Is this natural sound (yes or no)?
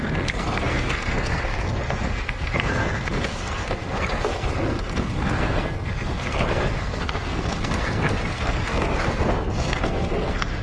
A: no